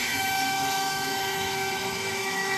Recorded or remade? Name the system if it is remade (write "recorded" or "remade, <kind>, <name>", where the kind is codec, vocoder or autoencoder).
remade, autoencoder, DAC-VAE